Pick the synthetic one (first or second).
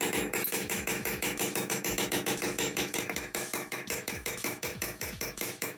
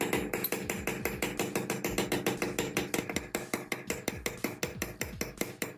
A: first